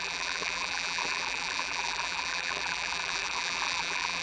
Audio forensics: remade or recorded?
remade